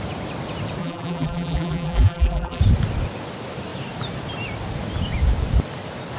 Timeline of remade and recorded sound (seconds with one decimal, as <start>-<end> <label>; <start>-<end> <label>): 0.0-0.8 recorded; 0.8-2.6 remade; 2.6-6.2 recorded